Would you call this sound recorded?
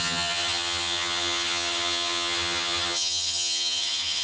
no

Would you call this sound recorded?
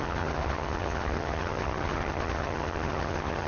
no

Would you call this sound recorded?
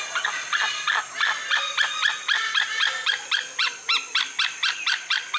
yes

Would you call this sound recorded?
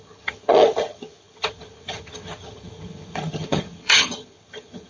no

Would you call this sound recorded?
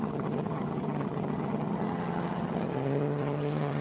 no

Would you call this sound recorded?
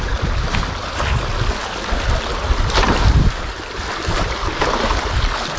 yes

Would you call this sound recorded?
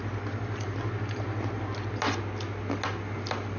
yes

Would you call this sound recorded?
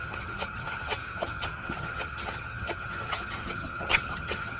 no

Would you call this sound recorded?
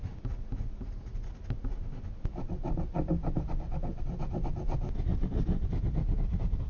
yes